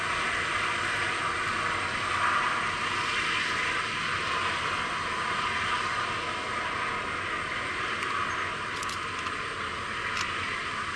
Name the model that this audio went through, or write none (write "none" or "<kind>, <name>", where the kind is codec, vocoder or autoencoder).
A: none